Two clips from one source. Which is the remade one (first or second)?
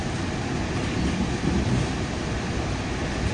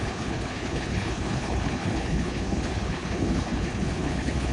second